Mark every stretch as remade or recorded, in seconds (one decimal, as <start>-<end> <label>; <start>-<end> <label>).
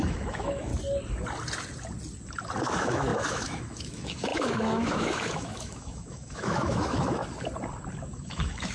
0.0-0.7 remade; 0.7-2.6 recorded; 2.6-7.2 remade; 7.2-8.0 recorded; 8.0-8.7 remade